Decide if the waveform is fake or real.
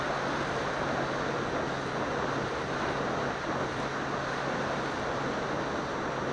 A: real